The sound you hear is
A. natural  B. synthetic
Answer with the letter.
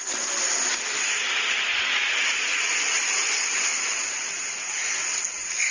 A